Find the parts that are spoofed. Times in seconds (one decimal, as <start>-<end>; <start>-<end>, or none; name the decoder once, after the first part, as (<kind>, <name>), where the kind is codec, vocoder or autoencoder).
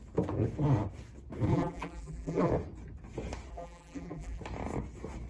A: 1.5-2.5 (vocoder, BigVGAN v2); 3.5-4.4